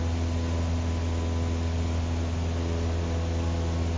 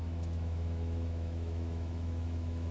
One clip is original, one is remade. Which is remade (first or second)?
second